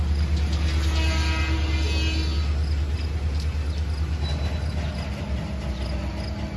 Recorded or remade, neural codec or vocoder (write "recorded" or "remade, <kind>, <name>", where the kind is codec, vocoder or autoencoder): recorded